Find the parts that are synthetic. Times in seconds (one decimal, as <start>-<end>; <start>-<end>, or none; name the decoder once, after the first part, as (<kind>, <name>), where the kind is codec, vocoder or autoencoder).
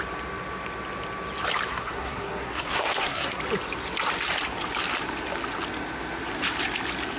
1.7-3.4 (codec, SNAC)